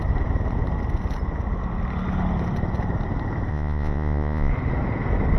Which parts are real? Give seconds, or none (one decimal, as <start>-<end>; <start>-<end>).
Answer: 0.0-3.5; 4.5-5.4